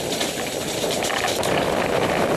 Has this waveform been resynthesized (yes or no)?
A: yes